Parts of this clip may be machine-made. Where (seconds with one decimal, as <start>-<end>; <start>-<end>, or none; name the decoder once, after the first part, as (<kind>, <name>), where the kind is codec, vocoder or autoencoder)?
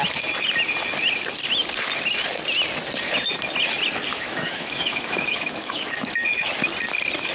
4.1-6.5 (autoencoder, DAC-VAE)